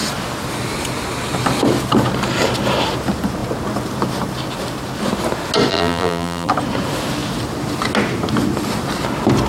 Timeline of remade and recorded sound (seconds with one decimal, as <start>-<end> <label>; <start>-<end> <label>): 0.0-5.7 recorded; 5.7-6.5 remade; 6.5-9.5 recorded